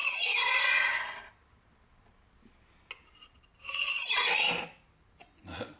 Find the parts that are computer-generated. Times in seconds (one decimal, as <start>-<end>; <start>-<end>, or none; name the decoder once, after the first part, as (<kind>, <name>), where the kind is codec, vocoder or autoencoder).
none